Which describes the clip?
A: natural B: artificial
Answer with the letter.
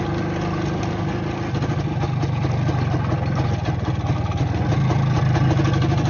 A